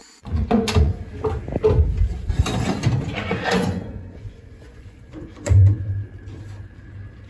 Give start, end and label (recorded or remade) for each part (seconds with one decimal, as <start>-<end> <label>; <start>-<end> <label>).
0.0-1.1 remade; 1.1-3.1 recorded; 3.1-5.9 remade; 5.9-7.3 recorded